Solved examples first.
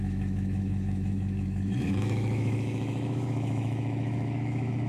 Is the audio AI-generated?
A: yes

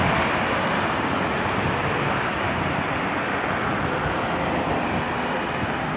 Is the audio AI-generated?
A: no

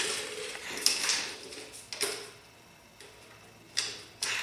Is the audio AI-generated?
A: no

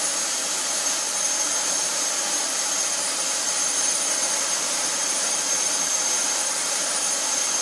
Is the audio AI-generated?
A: yes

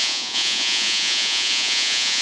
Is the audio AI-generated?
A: yes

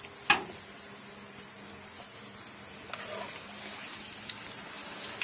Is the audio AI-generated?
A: no